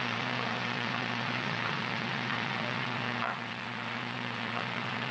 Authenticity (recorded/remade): remade